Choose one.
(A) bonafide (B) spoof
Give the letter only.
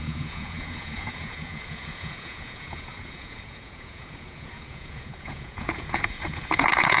B